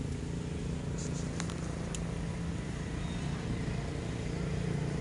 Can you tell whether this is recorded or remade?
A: recorded